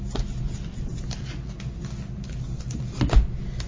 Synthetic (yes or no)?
no